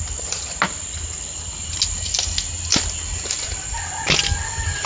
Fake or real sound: real